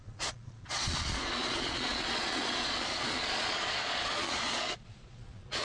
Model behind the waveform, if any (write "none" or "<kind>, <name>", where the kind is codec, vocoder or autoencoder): vocoder, Vocos